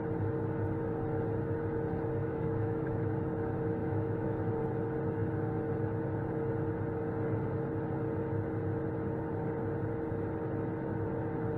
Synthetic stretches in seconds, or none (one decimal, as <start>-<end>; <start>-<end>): 2.2-3.1; 3.8-4.5